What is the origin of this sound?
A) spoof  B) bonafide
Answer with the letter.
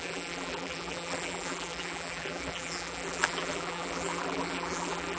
A